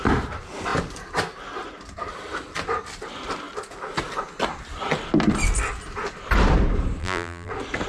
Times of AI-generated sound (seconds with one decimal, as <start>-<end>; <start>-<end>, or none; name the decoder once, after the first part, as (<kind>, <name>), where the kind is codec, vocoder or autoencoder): 7.0-7.5 (vocoder, BigVGAN v2)